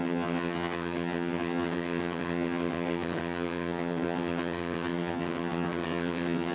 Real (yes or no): no